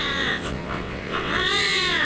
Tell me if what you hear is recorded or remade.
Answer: remade